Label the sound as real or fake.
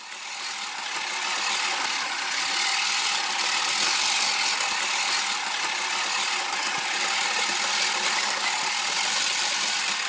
real